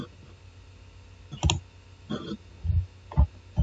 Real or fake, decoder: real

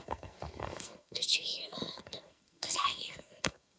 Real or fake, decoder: fake, codec, SNAC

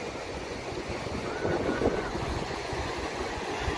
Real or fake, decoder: fake, vocoder, Vocos